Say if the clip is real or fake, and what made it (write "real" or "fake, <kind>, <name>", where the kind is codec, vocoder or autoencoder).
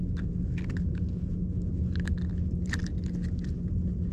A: real